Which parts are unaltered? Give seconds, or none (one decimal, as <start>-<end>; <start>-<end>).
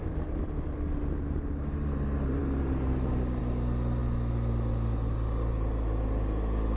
0.0-6.8